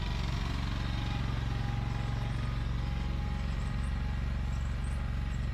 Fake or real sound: real